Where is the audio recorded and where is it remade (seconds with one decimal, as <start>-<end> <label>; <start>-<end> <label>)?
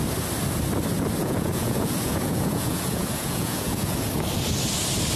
0.0-1.2 recorded; 1.2-4.1 remade; 4.1-5.2 recorded